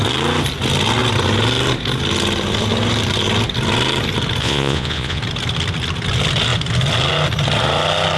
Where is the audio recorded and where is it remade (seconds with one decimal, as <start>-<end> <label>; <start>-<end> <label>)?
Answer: 0.0-4.4 recorded; 4.4-5.2 remade; 5.2-8.2 recorded

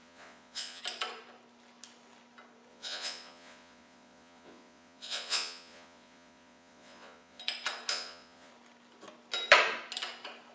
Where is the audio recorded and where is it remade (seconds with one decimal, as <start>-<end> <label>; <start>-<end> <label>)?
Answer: 0.0-0.8 remade; 0.8-2.7 recorded; 2.7-7.4 remade; 7.4-7.9 recorded; 7.9-8.5 remade; 8.5-10.5 recorded

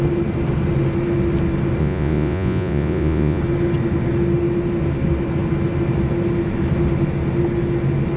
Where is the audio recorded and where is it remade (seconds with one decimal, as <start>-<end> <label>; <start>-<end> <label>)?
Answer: 0.0-1.8 recorded; 1.8-3.4 remade; 3.4-8.2 recorded

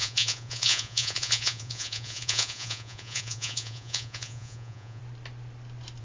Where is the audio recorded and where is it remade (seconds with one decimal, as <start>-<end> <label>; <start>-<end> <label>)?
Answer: 0.0-5.0 remade; 5.0-6.0 recorded

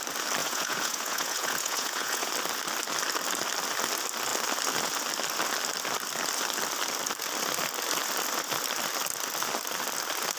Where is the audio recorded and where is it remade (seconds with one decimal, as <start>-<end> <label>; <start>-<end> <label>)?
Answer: 0.0-0.4 recorded; 0.4-2.3 remade; 2.3-10.4 recorded

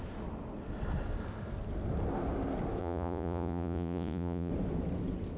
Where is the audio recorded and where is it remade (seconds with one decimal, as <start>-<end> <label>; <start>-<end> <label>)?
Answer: 0.0-2.8 recorded; 2.8-4.5 remade; 4.5-5.4 recorded